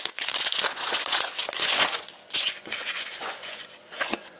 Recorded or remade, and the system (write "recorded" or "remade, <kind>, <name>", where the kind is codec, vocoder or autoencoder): remade, vocoder, Vocos